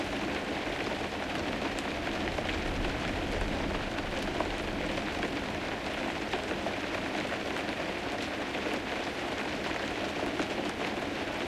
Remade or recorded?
recorded